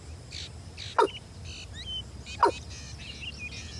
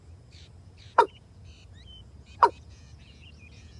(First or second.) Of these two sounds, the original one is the first